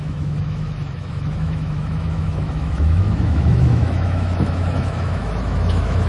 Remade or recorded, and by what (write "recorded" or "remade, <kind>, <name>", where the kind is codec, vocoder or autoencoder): remade, autoencoder, DAC-VAE